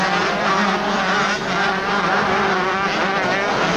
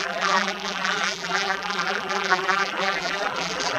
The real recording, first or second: first